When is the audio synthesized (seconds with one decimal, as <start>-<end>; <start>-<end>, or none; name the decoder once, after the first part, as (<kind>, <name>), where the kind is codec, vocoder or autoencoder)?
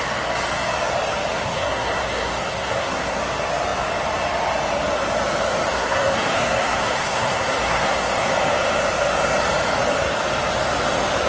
1.3-3.2 (codec, SNAC); 5.7-8.3